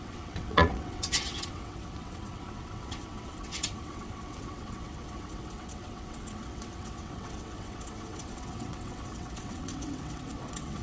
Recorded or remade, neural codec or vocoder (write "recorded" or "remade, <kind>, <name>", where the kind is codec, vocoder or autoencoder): remade, vocoder, WaveNeXt